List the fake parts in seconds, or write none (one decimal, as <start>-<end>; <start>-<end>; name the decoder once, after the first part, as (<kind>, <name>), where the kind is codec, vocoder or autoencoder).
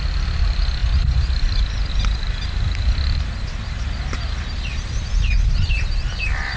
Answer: none